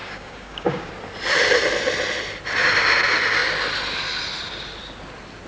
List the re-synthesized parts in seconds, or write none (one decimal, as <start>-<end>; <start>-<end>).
0.0-0.9

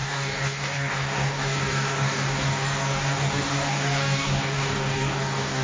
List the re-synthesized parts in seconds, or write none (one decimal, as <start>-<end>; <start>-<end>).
0.0-5.6

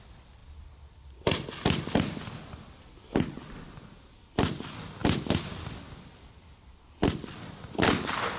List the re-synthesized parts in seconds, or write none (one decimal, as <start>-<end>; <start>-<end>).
none

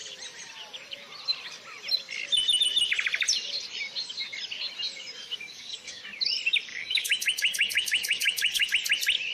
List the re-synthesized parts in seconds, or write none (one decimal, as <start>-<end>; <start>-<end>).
5.2-6.0; 6.7-8.7

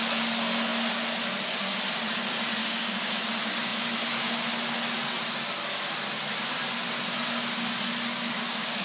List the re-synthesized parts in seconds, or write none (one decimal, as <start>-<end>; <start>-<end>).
2.6-3.2

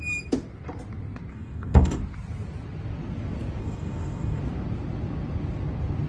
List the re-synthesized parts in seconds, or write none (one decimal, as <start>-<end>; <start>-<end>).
1.3-2.0; 3.6-4.4

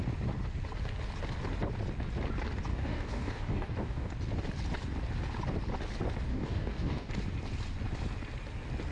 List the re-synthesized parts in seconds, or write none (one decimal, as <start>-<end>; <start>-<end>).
2.7-4.1; 6.3-7.1